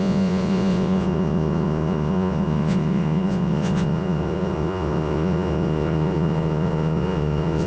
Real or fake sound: fake